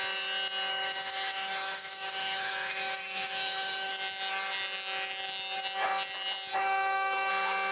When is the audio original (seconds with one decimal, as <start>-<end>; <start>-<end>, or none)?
0.0-0.7; 3.9-6.5; 7.3-7.7